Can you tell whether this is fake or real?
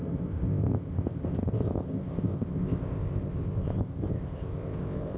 fake